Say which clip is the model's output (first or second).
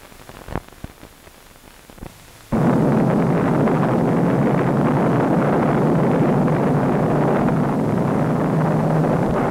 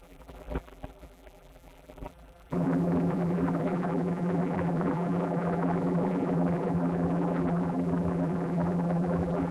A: second